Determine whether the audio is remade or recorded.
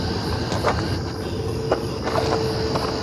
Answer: recorded